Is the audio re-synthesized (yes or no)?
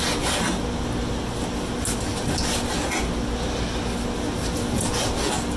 no